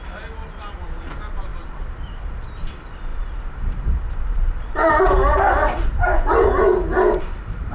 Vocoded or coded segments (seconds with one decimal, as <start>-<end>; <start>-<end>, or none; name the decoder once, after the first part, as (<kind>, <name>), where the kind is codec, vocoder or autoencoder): none